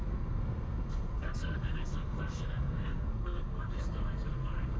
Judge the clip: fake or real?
fake